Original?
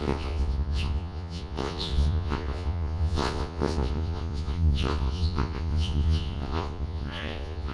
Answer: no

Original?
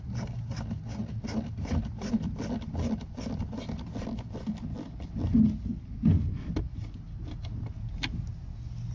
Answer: yes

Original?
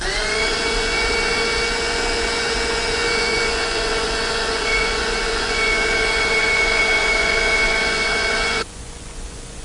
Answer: no